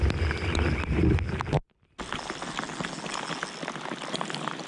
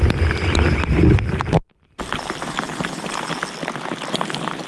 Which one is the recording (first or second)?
first